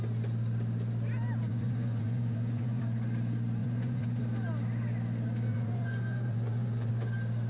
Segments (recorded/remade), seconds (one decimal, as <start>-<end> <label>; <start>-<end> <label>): 0.0-1.5 recorded; 1.5-2.8 remade; 2.8-3.6 recorded; 3.6-4.2 remade; 4.2-5.5 recorded; 5.5-6.9 remade; 6.9-7.5 recorded